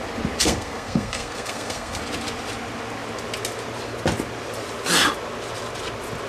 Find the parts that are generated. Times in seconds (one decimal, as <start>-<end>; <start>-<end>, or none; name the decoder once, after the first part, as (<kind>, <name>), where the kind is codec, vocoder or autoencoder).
0.4-2.0 (codec, SNAC)